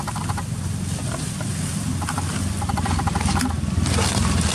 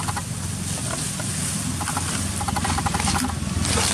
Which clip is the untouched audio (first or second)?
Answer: second